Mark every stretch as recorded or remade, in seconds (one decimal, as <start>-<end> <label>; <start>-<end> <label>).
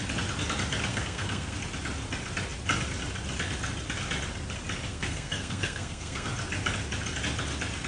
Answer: 0.0-0.9 recorded; 0.9-1.6 remade; 1.6-4.9 recorded; 4.9-6.3 remade; 6.3-7.9 recorded